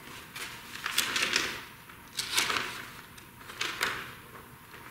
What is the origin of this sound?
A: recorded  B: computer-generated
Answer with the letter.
A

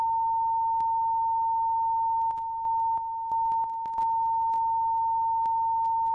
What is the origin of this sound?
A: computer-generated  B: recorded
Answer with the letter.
B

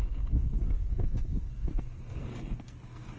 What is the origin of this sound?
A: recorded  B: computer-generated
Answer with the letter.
B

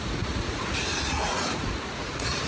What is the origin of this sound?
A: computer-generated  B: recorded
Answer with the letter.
A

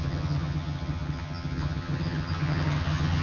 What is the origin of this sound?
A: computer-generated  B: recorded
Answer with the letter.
A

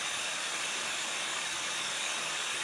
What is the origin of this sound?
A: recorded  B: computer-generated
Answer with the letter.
B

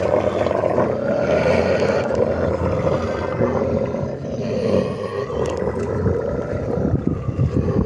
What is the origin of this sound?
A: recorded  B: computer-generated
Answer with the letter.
A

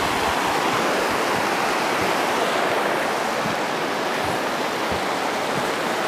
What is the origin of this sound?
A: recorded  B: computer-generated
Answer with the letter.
A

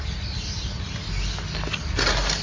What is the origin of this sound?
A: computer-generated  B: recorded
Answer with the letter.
B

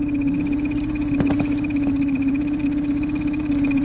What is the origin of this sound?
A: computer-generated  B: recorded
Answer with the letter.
B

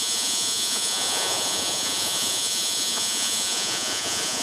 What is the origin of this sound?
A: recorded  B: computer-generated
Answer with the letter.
B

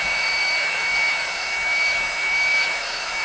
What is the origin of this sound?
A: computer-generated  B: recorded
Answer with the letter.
A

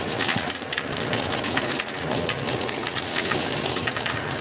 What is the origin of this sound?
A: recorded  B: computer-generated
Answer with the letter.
B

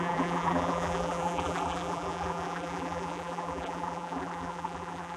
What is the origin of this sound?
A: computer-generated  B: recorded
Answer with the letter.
A